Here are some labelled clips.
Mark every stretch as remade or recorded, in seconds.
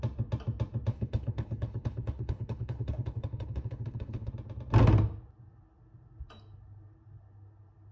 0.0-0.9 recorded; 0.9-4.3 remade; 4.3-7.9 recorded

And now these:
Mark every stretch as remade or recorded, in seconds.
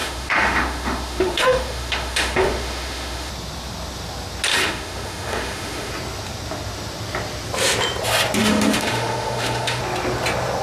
0.0-3.3 remade; 3.3-4.5 recorded; 4.5-5.9 remade; 5.9-8.4 recorded; 8.4-9.8 remade; 9.8-10.6 recorded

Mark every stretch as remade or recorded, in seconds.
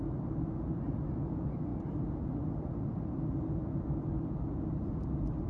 0.0-5.5 recorded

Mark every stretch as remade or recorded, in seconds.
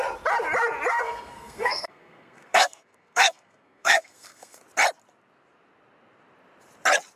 0.0-0.9 recorded; 0.9-4.6 remade; 4.6-7.2 recorded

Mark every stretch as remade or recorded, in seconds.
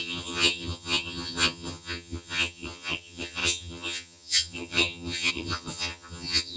0.0-6.6 remade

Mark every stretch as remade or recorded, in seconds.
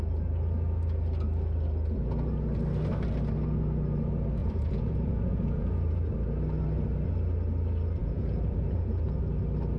0.0-4.4 recorded; 4.4-6.1 remade; 6.1-8.0 recorded; 8.0-9.2 remade; 9.2-9.8 recorded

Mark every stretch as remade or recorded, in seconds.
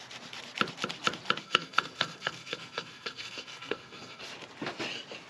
0.0-1.4 recorded; 1.4-4.2 remade; 4.2-5.3 recorded